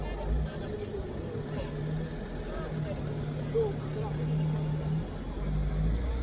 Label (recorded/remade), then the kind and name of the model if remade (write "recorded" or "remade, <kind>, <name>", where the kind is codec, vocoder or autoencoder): recorded